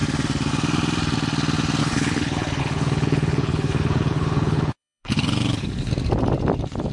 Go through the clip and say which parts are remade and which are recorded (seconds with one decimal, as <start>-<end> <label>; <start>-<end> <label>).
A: 0.0-1.8 recorded; 1.8-5.9 remade; 5.9-6.9 recorded